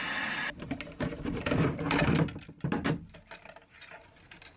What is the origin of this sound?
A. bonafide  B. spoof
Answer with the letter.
A